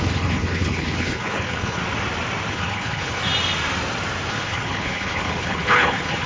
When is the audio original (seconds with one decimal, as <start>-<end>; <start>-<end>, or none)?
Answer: 1.8-2.5; 3.2-4.3